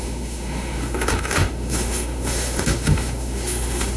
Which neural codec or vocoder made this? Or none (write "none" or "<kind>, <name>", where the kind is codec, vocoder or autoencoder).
autoencoder, DAC-VAE